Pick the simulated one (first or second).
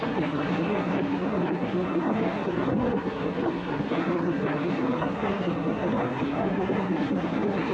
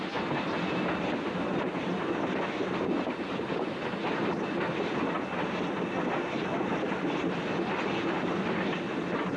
first